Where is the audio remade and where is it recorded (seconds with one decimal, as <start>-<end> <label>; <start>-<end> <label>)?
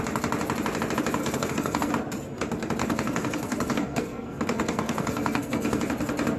0.0-1.2 recorded; 1.2-1.9 remade; 1.9-2.8 recorded; 2.8-5.8 remade; 5.8-6.4 recorded